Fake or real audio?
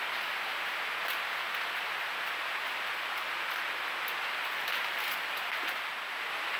real